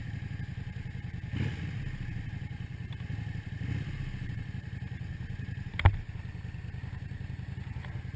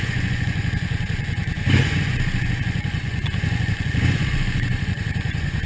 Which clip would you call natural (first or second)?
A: first